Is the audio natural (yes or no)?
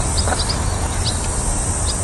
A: yes